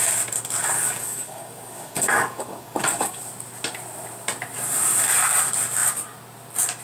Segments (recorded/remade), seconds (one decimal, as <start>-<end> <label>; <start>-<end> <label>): 0.0-0.6 recorded; 0.6-3.2 remade; 3.2-6.8 recorded